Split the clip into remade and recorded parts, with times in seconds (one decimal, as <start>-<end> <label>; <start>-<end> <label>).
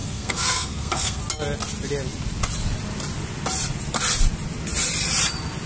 0.0-1.2 remade; 1.2-5.7 recorded